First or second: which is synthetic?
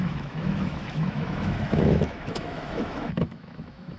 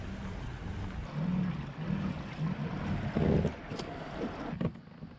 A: first